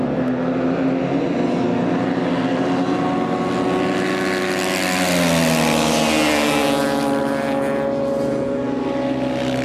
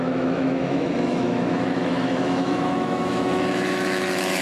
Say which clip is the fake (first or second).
second